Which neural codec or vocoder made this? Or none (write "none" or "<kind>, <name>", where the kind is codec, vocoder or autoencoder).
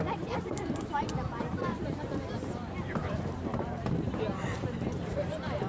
vocoder, BigVGAN v2